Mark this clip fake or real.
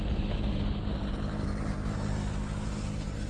real